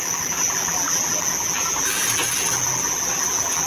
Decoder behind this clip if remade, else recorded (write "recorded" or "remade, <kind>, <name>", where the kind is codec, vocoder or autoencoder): remade, vocoder, BigVGAN v2